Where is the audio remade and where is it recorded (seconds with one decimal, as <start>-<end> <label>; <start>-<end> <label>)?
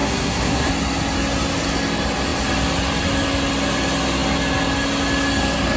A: 0.0-0.7 remade; 0.7-5.8 recorded